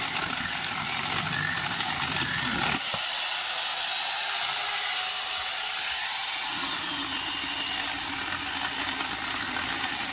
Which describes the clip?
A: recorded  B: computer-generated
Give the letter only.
A